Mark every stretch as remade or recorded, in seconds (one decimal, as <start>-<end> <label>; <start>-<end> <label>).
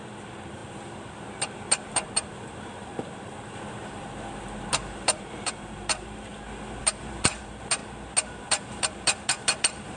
0.0-2.9 remade; 2.9-4.7 recorded; 4.7-6.3 remade; 6.3-6.8 recorded; 6.8-7.8 remade; 7.8-8.4 recorded; 8.4-10.0 remade